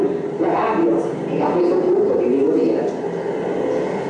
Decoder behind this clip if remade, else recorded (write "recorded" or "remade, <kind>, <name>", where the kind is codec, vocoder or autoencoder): recorded